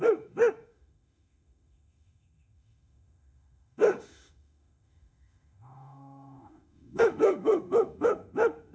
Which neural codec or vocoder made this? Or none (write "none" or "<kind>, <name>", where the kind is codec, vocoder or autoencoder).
autoencoder, DAC-VAE